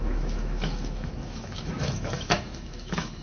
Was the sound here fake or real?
fake